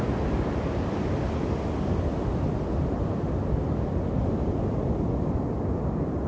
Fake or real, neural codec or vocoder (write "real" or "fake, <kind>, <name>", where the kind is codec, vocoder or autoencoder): real